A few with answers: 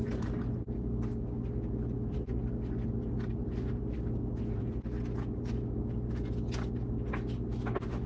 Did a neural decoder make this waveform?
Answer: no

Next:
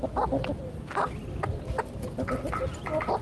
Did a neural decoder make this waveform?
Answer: no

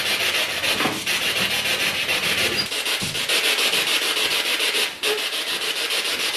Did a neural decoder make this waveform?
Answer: no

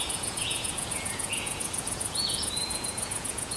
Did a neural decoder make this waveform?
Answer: yes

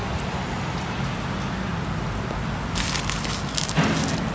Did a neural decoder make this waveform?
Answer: no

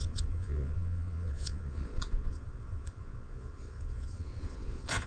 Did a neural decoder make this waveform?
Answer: yes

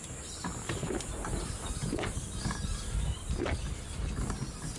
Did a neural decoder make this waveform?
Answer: no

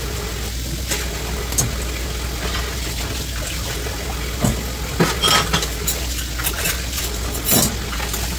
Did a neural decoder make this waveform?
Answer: no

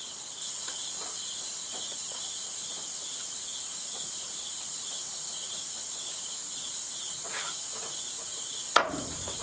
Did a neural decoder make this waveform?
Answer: yes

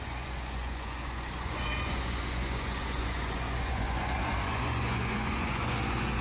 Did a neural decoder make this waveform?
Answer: yes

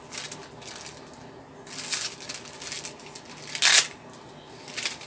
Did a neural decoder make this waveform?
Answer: no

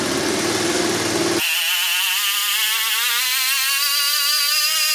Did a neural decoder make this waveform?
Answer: no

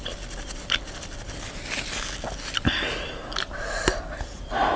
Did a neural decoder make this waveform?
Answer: no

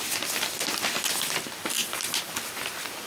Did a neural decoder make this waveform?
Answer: no